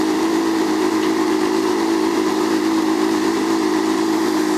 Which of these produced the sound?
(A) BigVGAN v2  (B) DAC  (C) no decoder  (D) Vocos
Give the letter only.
A